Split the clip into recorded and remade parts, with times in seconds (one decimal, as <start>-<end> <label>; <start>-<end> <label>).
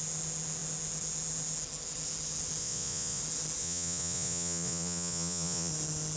0.0-2.6 recorded; 2.6-3.2 remade; 3.2-3.6 recorded; 3.6-5.7 remade; 5.7-6.2 recorded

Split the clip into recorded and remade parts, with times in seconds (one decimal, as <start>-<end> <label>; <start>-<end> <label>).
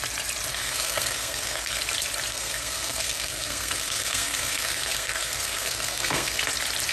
0.0-0.5 recorded; 0.5-1.8 remade; 1.8-2.3 recorded; 2.3-6.4 remade; 6.4-6.9 recorded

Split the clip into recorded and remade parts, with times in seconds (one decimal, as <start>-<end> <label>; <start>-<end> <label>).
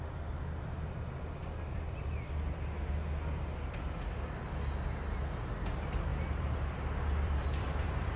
0.0-1.4 recorded; 1.4-2.1 remade; 2.1-6.1 recorded; 6.1-8.2 remade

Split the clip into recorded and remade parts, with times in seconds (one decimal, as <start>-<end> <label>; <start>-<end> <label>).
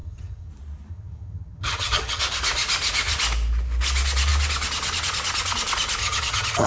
0.0-0.5 remade; 0.5-0.9 recorded; 0.9-2.2 remade; 2.2-6.0 recorded; 6.0-6.7 remade